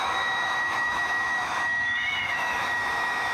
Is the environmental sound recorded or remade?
remade